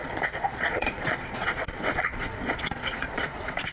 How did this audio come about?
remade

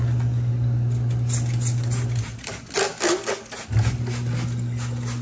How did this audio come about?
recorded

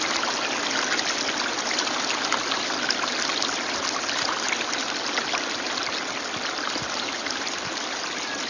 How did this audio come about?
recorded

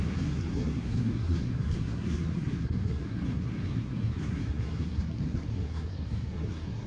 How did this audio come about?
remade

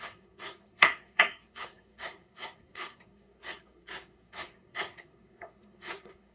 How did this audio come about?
remade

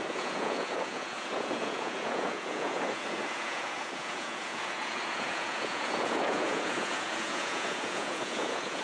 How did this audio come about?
remade